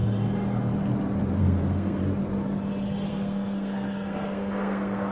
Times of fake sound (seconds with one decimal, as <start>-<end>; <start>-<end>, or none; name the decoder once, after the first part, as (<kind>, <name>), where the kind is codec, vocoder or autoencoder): 1.4-2.0 (codec, SNAC); 3.1-5.1